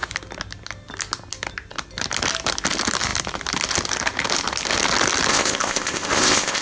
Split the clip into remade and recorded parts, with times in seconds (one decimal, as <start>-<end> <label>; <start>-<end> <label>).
0.0-5.3 recorded; 5.3-6.6 remade